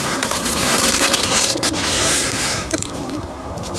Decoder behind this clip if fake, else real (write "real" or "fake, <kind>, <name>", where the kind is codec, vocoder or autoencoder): fake, codec, SNAC